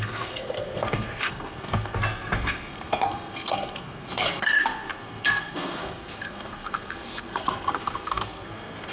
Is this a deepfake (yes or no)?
yes